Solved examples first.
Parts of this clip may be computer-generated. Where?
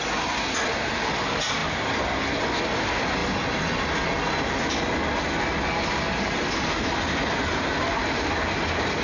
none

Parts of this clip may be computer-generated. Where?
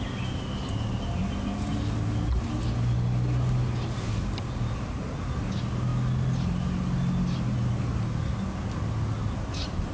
none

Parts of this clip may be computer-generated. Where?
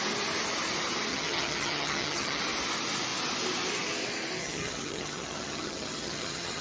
1.1-2.4 (vocoder, HiFi-GAN); 4.4-6.6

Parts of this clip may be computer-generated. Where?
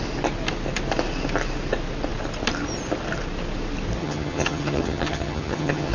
4.0-5.9 (vocoder, HiFi-GAN)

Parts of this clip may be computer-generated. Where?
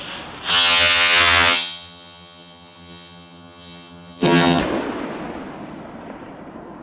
0.5-4.6 (vocoder, HiFi-GAN)